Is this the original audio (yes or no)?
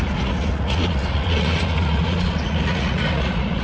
no